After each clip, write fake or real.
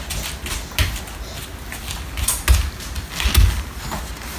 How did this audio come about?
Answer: real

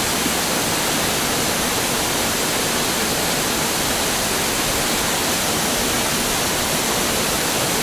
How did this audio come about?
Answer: real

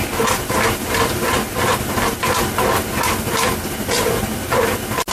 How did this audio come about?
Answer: real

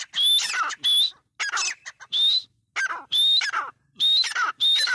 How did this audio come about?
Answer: real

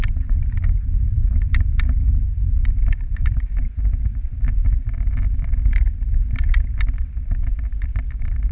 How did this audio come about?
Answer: real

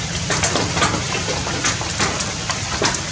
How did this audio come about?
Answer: real